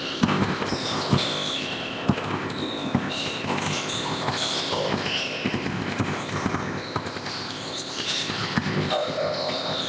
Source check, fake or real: fake